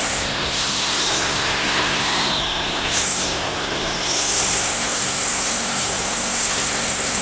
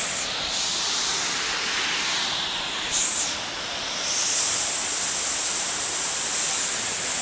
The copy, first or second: first